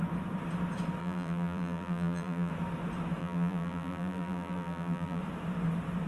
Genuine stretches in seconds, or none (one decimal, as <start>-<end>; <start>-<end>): 0.0-1.0; 2.5-3.2; 5.2-6.1